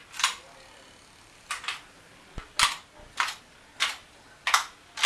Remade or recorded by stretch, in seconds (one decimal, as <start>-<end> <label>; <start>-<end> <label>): 0.0-5.1 recorded